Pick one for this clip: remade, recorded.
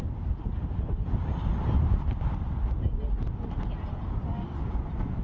recorded